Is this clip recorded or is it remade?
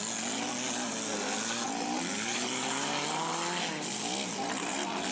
recorded